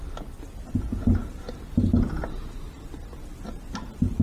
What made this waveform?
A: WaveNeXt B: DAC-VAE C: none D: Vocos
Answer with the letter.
C